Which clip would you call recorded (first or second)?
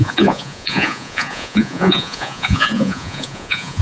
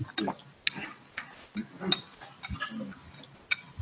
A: second